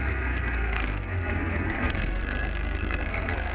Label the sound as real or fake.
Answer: fake